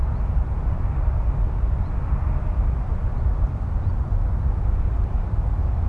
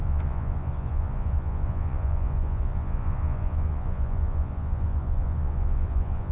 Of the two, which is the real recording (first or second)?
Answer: first